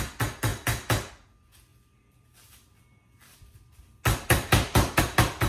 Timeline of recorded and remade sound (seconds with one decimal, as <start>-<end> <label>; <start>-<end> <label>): 0.0-0.5 recorded; 0.5-1.1 remade; 1.1-1.7 recorded; 1.7-5.0 remade; 5.0-5.5 recorded